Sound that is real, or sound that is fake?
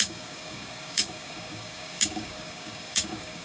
fake